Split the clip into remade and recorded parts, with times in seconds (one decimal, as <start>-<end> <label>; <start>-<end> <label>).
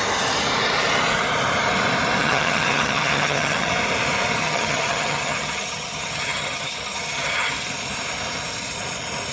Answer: 0.0-2.2 recorded; 2.2-3.7 remade; 3.7-4.4 recorded; 4.4-7.5 remade; 7.5-9.3 recorded